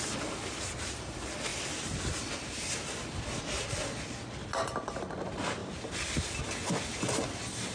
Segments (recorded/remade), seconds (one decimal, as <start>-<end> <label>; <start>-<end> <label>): 0.0-7.7 recorded